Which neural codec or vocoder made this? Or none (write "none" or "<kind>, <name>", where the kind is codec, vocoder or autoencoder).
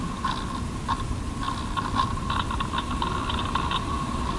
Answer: none